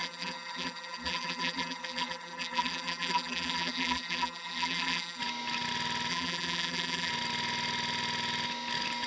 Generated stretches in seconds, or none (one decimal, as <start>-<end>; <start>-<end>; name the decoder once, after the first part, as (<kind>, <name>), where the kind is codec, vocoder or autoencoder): 0.0-5.2 (vocoder, BigVGAN v2); 6.1-7.1